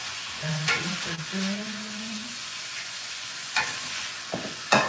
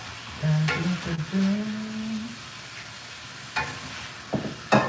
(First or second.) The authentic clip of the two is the second